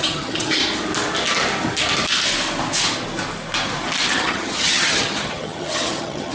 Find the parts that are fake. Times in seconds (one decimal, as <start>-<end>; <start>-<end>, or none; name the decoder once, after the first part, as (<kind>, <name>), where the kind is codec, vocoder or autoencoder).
0.0-0.6 (vocoder, HiFi-GAN); 4.1-6.3